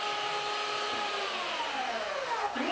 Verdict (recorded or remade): recorded